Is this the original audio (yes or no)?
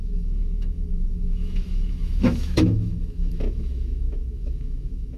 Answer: no